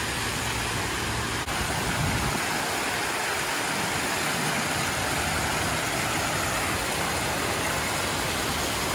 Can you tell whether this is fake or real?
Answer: real